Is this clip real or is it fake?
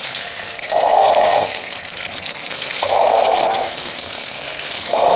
fake